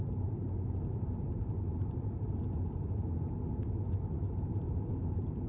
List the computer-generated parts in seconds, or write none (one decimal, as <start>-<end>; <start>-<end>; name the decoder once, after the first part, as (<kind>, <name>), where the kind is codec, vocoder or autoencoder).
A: 0.0-3.0 (vocoder, BigVGAN v2); 3.9-5.5